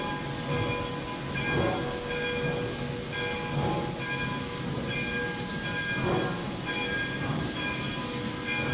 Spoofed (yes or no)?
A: no